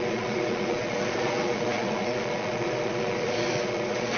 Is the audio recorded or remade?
remade